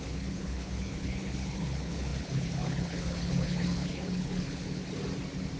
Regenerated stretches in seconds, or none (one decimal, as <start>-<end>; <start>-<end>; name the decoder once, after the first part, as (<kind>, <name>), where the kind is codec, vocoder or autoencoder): 0.0-4.8 (codec, HILCodec)